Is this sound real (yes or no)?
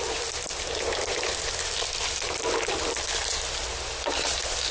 yes